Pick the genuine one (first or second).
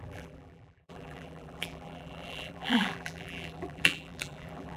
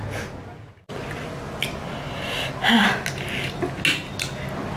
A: second